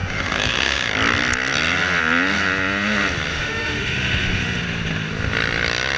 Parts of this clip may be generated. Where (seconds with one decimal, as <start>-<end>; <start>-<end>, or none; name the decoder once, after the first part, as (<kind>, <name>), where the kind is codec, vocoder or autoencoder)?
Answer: 0.0-0.9 (autoencoder, DAC-VAE); 3.3-4.6